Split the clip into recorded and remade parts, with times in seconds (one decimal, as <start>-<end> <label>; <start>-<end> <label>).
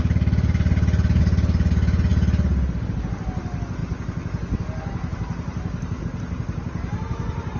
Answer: 0.0-7.6 recorded